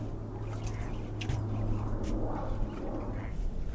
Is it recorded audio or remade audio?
recorded